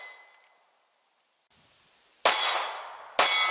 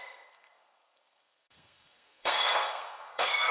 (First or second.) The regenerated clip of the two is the second